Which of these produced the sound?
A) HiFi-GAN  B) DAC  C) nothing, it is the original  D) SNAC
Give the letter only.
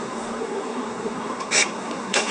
D